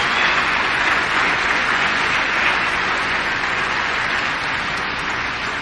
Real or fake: fake